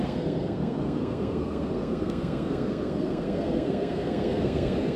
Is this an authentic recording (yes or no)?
no